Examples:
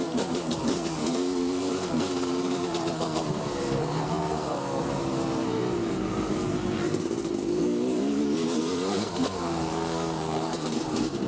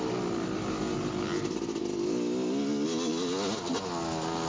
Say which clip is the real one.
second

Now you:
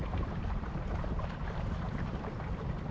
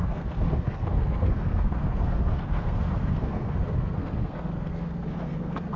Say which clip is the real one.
first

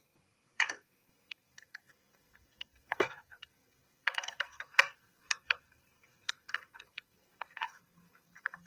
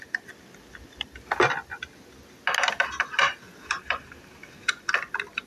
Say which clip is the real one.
second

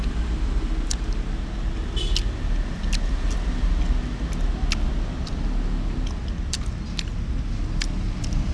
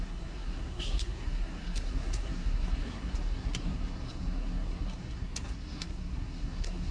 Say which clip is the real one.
first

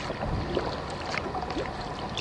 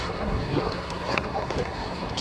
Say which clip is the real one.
first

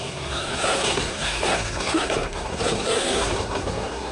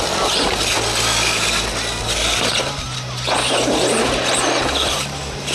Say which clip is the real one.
second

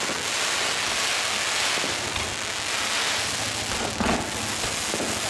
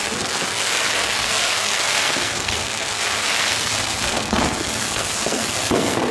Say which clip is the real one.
first